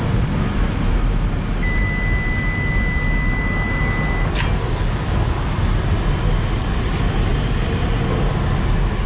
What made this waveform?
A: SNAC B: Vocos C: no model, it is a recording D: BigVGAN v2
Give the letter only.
C